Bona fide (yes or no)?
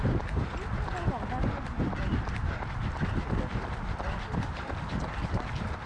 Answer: yes